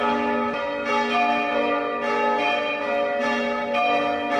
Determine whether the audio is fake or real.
real